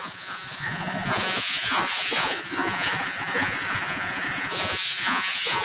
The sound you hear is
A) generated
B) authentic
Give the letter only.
A